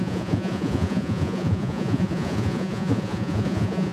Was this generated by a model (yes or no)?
yes